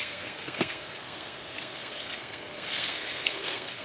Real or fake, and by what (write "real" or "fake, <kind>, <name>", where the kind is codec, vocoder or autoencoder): fake, codec, SNAC